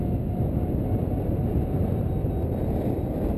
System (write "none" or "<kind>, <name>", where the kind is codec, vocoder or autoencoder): none